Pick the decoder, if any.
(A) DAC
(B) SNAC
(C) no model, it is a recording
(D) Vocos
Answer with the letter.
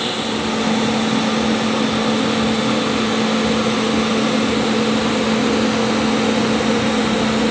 C